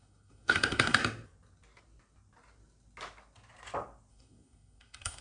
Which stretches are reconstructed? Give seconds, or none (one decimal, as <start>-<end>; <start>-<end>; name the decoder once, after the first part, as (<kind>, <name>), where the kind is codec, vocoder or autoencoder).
0.0-1.0 (codec, SNAC); 4.1-5.2